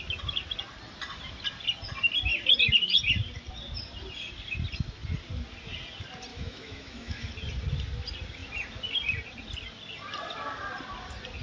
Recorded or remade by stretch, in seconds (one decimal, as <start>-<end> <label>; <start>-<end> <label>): 0.0-6.3 recorded; 6.3-7.3 remade; 7.3-11.4 recorded